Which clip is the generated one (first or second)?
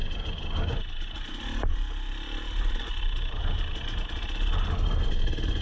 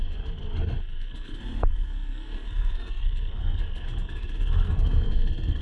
second